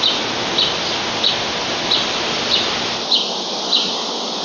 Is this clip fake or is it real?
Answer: real